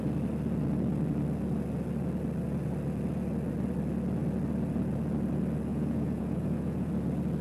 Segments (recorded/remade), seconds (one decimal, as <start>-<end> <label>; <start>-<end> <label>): 0.0-5.7 recorded; 5.7-6.9 remade; 6.9-7.4 recorded